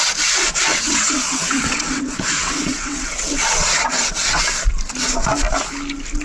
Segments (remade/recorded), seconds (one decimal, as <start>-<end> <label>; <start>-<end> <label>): 0.0-0.7 recorded; 0.7-4.4 remade; 4.4-6.2 recorded